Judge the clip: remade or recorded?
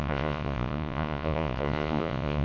remade